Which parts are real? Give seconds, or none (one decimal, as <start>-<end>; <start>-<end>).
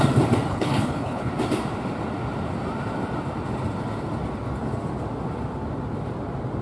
0.0-0.5; 1.3-6.6